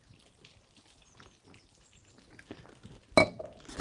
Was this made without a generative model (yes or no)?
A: yes